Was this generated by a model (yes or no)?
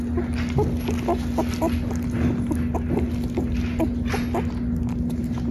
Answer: no